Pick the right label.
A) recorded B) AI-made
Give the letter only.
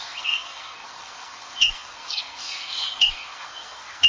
B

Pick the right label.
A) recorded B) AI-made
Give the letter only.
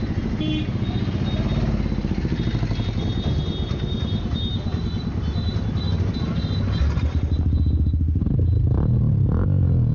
A